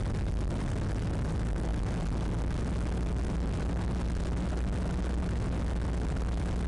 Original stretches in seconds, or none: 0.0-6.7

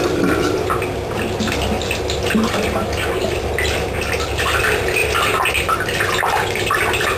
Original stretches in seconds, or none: 0.0-7.2